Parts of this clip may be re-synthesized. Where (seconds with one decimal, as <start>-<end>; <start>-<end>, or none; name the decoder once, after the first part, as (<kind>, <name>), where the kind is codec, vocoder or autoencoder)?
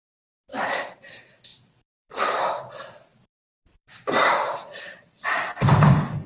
0.5-1.1 (vocoder, BigVGAN v2); 1.5-2.7; 3.1-5.3